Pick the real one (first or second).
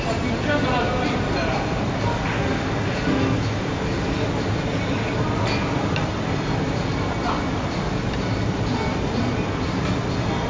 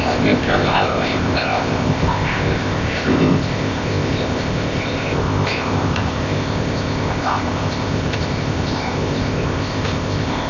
first